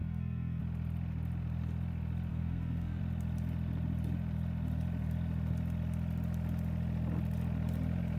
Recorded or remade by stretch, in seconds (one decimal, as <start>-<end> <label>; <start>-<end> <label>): 0.0-0.6 remade; 0.6-2.3 recorded; 2.3-3.0 remade; 3.0-8.2 recorded